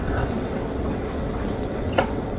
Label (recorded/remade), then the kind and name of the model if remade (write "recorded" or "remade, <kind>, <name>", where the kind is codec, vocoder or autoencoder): remade, vocoder, WaveNeXt